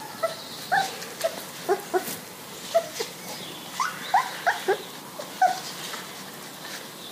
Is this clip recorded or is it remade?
recorded